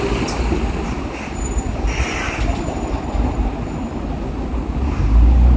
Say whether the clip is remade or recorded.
recorded